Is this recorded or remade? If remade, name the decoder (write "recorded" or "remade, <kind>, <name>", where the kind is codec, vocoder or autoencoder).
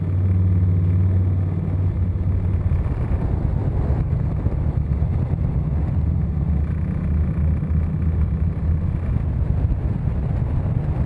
recorded